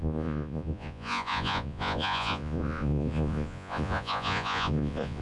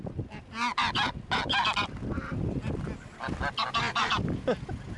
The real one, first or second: second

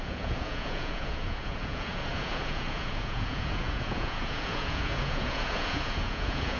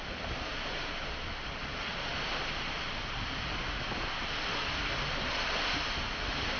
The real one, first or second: second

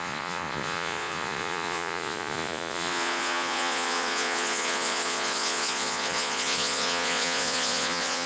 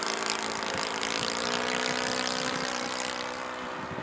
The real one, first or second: second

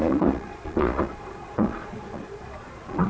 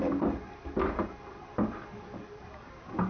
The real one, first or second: second